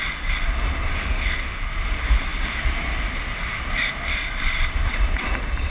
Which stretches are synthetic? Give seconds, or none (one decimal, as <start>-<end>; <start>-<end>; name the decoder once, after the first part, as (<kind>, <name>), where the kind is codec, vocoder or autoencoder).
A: 0.9-1.6 (autoencoder, DAC-VAE)